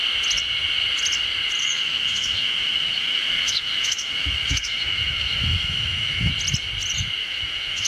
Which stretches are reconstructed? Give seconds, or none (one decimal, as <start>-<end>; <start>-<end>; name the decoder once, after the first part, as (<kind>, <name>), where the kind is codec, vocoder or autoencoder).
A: 1.6-6.3 (autoencoder, DAC-VAE); 7.2-7.9